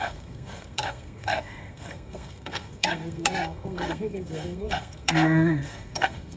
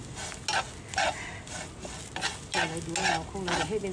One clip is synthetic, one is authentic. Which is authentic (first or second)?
second